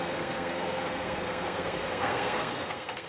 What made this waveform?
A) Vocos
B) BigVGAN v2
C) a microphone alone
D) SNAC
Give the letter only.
D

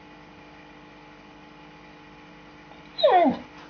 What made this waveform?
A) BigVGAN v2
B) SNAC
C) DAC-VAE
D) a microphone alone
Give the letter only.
D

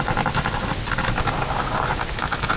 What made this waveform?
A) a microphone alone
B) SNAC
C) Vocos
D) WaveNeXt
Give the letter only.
A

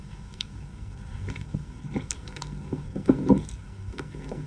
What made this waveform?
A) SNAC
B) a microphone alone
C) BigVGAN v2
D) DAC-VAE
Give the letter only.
A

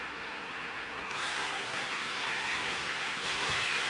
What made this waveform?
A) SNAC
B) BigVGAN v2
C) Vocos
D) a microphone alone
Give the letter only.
A